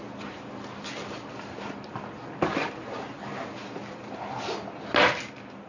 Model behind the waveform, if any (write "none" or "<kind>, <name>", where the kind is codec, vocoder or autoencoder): none